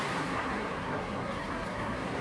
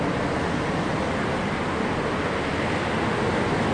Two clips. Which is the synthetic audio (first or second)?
first